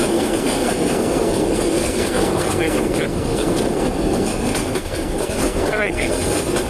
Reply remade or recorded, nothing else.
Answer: remade